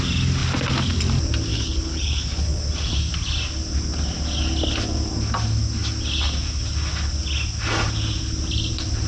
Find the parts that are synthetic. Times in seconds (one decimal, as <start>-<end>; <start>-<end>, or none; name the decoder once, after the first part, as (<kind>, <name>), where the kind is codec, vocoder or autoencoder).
1.5-2.6 (codec, HILCodec)